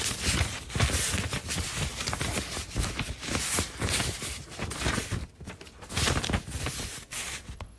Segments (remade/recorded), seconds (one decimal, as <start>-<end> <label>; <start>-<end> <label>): 0.0-7.1 recorded; 7.1-7.8 remade